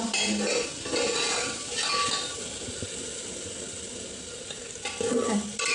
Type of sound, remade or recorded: recorded